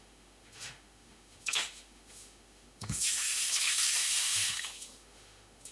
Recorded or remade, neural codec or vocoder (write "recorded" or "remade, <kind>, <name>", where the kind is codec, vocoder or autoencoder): remade, autoencoder, DAC-VAE